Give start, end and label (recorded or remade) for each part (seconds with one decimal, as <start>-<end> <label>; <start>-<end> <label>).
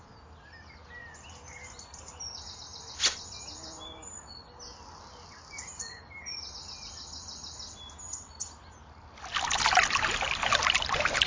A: 0.0-11.3 recorded